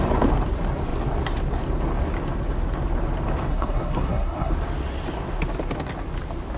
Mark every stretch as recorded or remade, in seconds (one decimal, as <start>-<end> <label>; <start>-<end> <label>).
0.0-3.5 recorded; 3.5-4.5 remade; 4.5-6.6 recorded